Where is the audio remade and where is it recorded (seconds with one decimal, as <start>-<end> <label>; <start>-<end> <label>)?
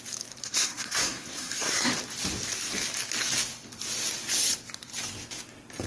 0.0-0.4 recorded; 0.4-1.9 remade; 1.9-5.9 recorded